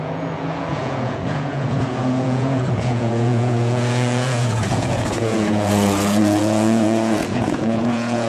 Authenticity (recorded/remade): remade